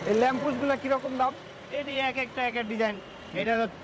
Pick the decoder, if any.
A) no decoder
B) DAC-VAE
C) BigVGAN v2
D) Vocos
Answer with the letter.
D